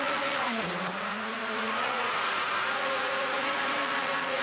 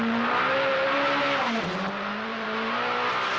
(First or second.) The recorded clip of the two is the second